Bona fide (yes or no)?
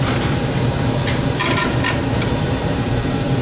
no